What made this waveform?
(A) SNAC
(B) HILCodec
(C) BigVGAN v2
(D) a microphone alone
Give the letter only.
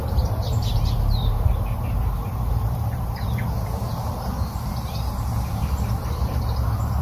C